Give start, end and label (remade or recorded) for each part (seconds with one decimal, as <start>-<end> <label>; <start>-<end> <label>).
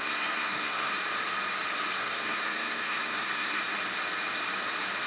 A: 0.0-0.9 remade; 0.9-2.0 recorded; 2.0-3.6 remade; 3.6-5.1 recorded